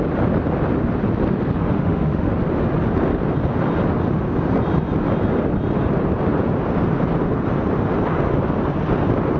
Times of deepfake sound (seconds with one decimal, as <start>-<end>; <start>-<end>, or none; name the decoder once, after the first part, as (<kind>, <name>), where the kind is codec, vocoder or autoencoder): 1.6-2.3 (autoencoder, DAC-VAE)